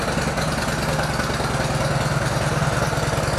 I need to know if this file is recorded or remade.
recorded